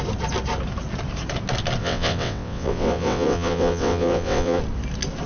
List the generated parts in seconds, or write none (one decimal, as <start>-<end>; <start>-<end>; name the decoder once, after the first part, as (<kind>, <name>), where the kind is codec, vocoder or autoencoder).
1.8-4.6 (vocoder, WaveNeXt)